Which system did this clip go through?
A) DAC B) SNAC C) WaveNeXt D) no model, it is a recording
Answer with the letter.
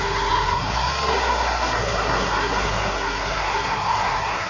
B